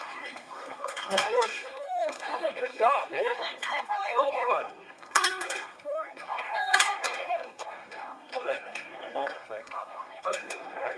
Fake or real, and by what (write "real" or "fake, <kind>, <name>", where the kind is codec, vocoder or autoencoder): fake, codec, SNAC